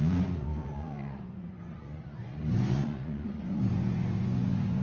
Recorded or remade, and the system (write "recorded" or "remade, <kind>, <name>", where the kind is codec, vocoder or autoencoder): remade, vocoder, Vocos